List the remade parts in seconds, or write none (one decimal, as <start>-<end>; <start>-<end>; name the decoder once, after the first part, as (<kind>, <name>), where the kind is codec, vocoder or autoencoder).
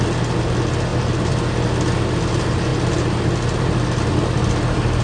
none